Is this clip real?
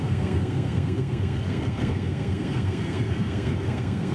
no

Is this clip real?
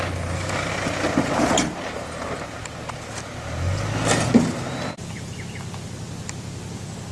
yes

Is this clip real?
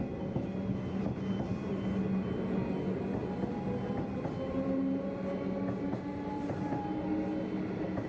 yes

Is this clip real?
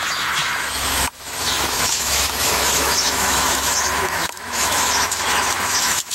no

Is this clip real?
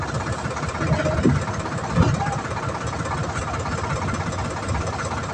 yes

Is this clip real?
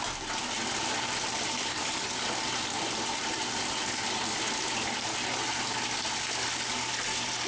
yes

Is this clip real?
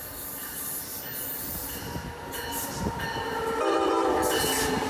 yes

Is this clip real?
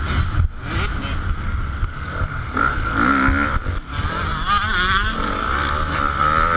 yes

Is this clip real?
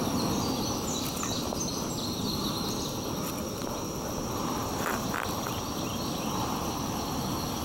yes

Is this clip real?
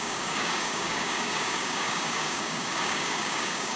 no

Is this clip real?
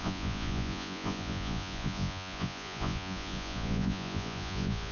no